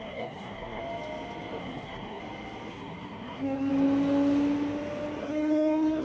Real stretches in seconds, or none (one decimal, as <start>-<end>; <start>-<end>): 0.8-1.6; 2.2-2.7; 3.7-5.2